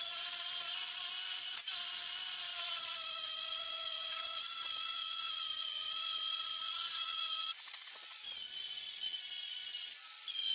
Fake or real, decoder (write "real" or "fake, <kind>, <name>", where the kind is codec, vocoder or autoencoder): fake, vocoder, Vocos